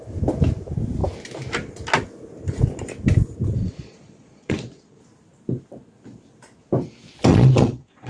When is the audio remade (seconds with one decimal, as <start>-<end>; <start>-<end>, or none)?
3.6-5.0; 7.3-8.1